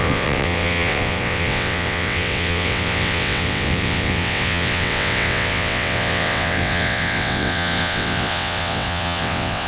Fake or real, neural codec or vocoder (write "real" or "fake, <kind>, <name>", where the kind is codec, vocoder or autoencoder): fake, vocoder, WaveNeXt